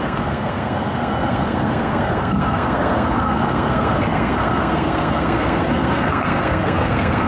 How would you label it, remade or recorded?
remade